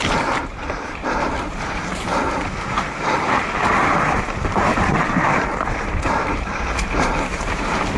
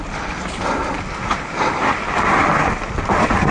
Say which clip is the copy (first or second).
first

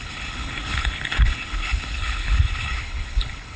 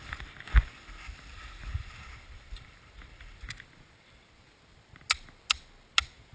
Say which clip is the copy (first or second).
first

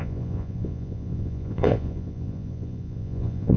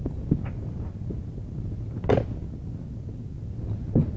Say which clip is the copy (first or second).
first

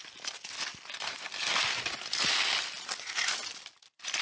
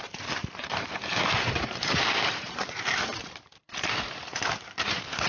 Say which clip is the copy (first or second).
second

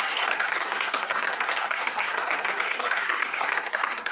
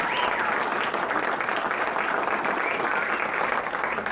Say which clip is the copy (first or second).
first